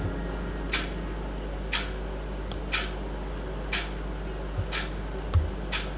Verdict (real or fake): real